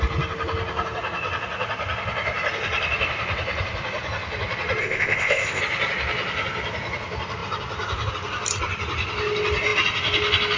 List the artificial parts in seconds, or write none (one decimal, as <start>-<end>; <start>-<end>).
4.8-5.6